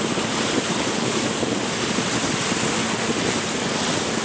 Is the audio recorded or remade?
recorded